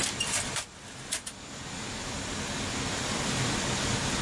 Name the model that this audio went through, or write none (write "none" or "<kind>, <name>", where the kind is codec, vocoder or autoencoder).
vocoder, BigVGAN v2